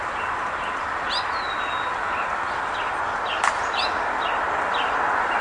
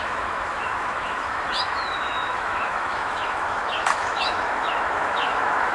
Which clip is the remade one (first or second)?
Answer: second